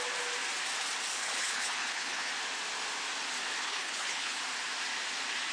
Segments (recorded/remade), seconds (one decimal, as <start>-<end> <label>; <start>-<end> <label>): 0.0-1.1 recorded; 1.1-2.3 remade; 2.3-3.6 recorded; 3.6-4.4 remade; 4.4-5.5 recorded